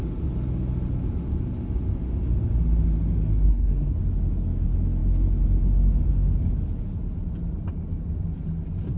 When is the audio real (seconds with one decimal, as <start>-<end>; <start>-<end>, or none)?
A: 0.0-3.5; 4.0-9.0